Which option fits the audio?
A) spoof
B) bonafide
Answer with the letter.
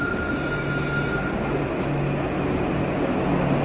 B